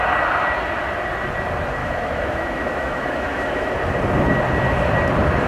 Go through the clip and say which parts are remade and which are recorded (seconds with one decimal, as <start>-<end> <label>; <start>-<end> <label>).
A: 0.0-1.8 recorded; 1.8-3.7 remade; 3.7-5.5 recorded